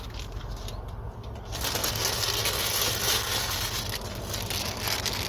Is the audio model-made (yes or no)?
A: no